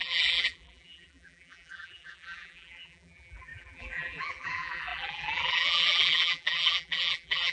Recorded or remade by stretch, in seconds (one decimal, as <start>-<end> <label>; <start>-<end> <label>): 0.0-7.5 remade